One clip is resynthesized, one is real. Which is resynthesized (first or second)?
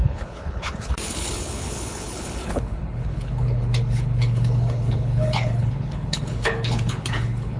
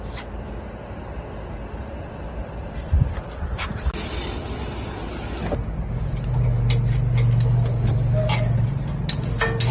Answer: first